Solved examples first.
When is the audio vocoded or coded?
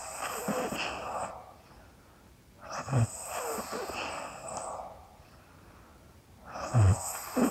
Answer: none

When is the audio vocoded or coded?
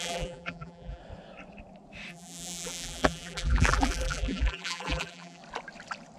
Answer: 0.0-1.0; 2.1-5.4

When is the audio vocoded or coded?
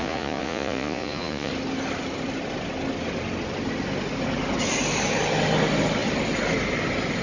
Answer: 0.0-1.5